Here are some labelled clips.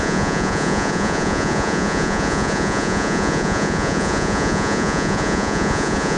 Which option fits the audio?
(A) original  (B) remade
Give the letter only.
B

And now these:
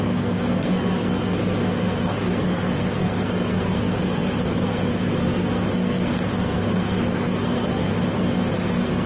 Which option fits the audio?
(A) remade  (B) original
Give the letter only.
A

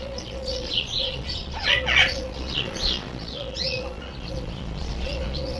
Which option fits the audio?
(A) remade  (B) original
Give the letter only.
A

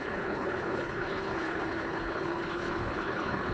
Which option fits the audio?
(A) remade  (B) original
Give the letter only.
A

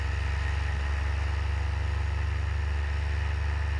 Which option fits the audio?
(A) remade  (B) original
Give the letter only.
B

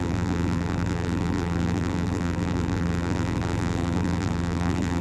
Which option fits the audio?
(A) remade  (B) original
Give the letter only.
A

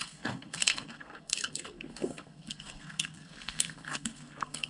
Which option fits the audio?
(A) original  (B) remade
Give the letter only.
B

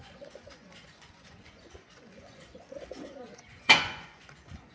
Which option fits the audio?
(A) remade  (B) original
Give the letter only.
A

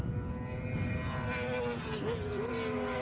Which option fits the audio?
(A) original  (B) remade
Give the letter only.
A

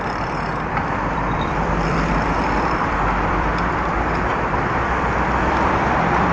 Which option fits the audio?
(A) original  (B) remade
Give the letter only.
B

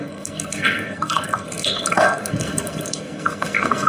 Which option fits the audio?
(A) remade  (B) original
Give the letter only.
A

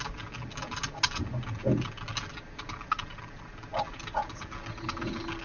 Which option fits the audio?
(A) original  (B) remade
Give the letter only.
A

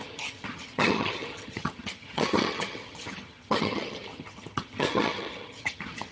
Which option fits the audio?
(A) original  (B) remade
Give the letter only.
B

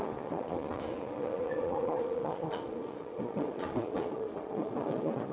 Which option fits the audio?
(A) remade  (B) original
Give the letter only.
A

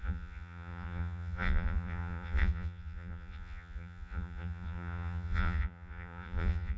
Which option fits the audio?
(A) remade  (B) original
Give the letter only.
A